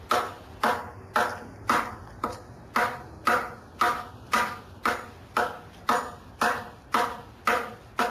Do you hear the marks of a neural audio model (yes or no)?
no